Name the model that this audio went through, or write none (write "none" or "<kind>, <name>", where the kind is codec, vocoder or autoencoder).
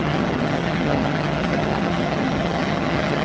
vocoder, HiFi-GAN